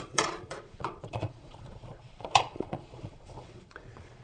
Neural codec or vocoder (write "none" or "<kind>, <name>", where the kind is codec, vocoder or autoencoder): vocoder, Vocos